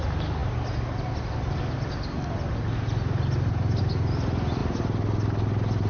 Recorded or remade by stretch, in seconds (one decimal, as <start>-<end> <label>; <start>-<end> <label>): 0.0-5.9 recorded